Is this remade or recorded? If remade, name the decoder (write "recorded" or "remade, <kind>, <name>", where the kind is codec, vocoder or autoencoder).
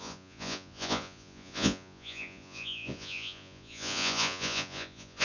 remade, vocoder, Vocos